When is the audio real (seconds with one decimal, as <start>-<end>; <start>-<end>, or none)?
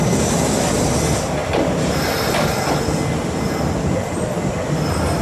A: 0.0-5.2